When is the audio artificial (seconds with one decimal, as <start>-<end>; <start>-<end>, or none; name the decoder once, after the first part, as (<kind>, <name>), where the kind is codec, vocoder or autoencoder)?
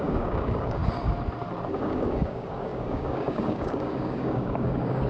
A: 0.0-0.8 (codec, DAC); 1.7-5.1